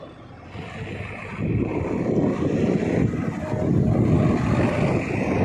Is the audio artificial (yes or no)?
no